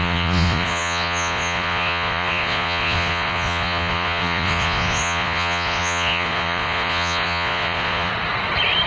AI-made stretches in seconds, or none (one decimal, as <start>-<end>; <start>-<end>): 0.0-8.1